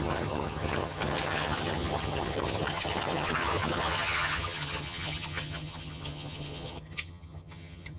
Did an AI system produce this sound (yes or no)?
yes